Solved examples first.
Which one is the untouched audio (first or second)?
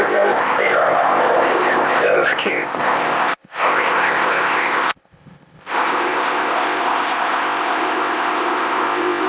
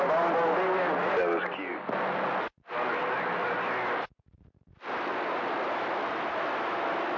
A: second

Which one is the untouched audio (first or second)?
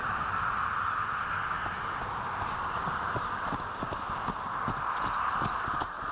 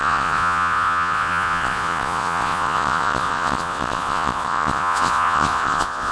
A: first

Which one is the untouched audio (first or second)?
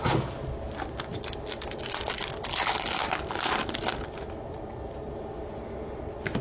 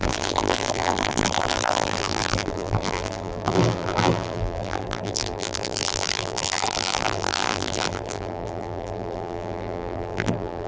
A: first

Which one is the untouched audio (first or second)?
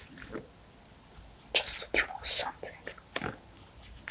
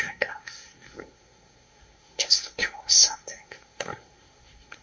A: first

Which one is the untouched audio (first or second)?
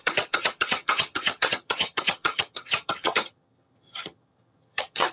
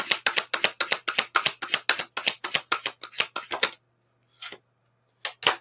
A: second